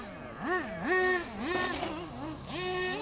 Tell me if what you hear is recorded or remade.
recorded